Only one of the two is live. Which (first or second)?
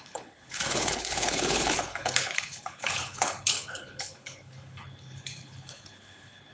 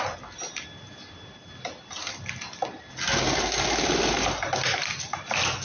second